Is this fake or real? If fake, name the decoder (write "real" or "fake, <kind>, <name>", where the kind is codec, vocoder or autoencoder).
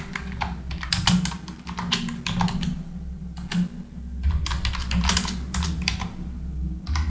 real